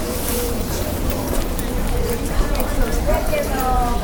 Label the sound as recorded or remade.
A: remade